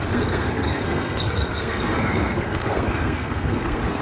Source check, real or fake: fake